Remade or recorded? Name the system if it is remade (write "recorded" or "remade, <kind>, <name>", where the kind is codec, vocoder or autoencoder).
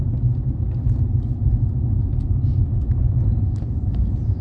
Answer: recorded